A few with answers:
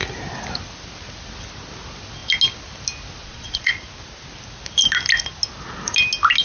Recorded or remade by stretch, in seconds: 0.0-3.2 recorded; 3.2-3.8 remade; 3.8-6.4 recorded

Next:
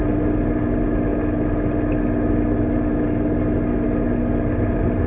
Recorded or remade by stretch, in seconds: 0.0-5.1 recorded

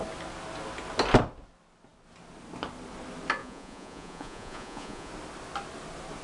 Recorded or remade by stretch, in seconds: 0.0-3.4 recorded; 3.4-5.1 remade; 5.1-6.2 recorded

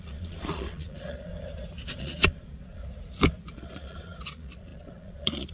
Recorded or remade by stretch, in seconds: 0.0-1.3 remade; 1.3-2.0 recorded; 2.0-2.8 remade; 2.8-3.4 recorded; 3.4-5.5 remade

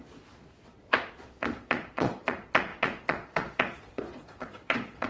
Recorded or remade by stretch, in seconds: 0.0-5.1 remade

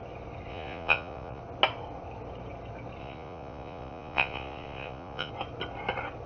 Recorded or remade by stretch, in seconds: 0.0-0.5 recorded; 0.5-1.4 remade; 1.4-3.0 recorded; 3.0-5.3 remade; 5.3-6.3 recorded

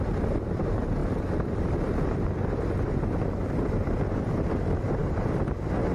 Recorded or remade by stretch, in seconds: 0.0-5.9 recorded

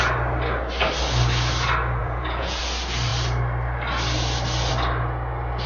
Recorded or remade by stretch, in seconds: 0.0-2.0 recorded; 2.0-2.6 remade; 2.6-5.7 recorded